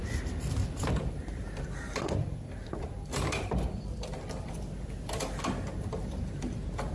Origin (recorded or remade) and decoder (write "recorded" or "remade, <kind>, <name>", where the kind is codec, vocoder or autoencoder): remade, vocoder, BigVGAN v2